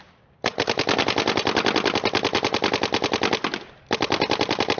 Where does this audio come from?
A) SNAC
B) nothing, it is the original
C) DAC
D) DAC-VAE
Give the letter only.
B